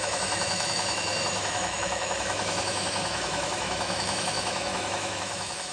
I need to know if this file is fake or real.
fake